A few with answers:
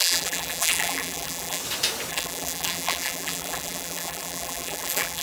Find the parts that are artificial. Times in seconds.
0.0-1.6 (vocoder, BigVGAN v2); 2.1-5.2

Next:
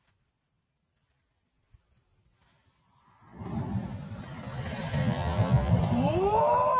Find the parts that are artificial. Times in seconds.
5.0-5.7 (vocoder, BigVGAN v2)

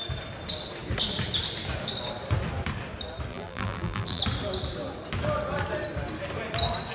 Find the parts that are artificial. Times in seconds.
3.3-4.2 (vocoder, BigVGAN v2)

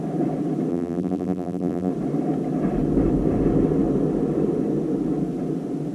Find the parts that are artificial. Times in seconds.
0.7-1.9 (vocoder, BigVGAN v2)

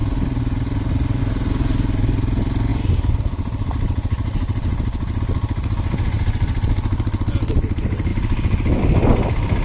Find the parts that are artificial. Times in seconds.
none